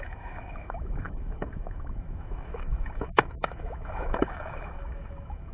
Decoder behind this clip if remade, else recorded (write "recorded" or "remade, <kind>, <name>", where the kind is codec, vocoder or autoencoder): remade, autoencoder, DAC-VAE